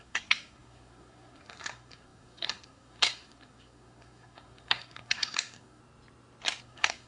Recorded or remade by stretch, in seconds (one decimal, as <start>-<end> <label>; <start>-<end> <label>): 0.0-5.8 remade; 5.8-6.6 recorded; 6.6-7.1 remade